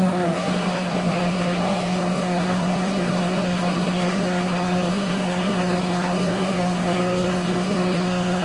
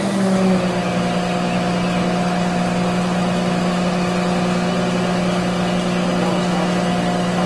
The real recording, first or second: second